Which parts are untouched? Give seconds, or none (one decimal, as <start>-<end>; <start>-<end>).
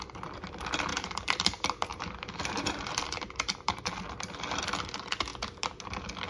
0.0-0.9; 4.6-6.3